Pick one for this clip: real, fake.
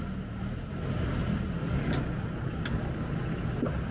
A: real